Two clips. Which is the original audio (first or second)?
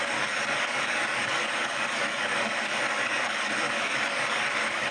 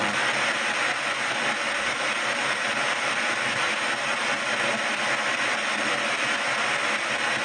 second